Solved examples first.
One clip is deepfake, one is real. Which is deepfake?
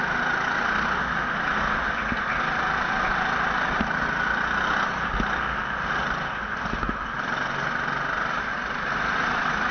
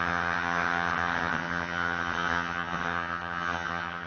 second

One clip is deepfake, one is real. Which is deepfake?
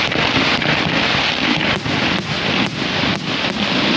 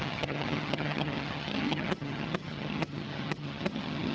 second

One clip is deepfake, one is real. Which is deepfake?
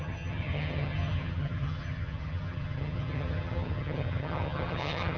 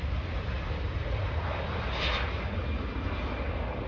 first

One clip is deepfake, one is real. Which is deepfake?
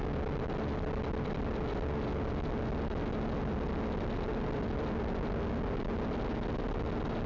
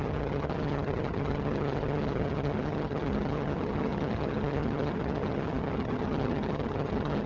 second